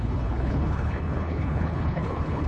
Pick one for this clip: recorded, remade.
remade